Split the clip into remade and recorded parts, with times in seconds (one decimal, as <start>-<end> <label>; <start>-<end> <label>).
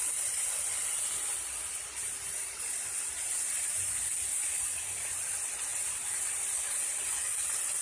0.0-7.8 recorded